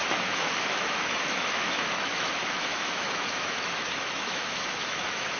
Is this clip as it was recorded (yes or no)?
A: no